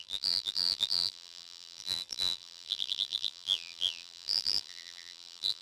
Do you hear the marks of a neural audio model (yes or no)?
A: yes